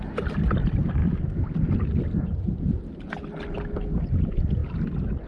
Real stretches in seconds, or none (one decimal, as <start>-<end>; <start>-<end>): 0.0-5.3